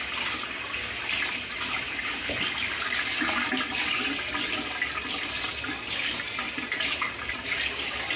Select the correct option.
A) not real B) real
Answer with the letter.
B